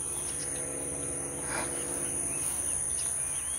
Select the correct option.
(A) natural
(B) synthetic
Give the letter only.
A